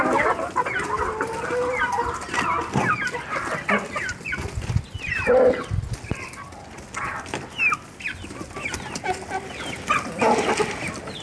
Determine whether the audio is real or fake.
real